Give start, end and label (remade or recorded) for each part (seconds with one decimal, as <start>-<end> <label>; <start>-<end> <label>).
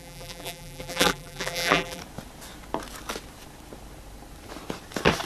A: 0.0-2.0 remade; 2.0-5.3 recorded